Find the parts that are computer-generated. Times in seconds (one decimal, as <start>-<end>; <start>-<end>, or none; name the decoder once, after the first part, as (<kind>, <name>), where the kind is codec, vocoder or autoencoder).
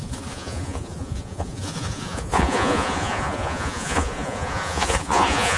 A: 0.0-5.6 (vocoder, Vocos)